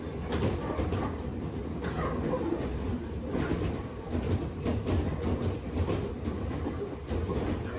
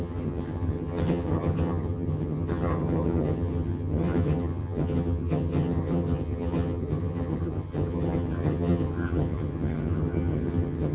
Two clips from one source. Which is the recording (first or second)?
first